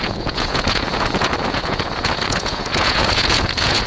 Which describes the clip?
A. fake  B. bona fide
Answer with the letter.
A